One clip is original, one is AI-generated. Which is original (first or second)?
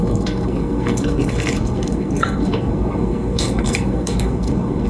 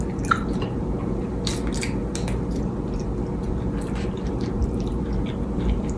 second